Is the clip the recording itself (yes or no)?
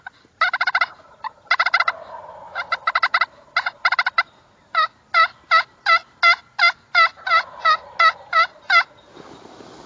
yes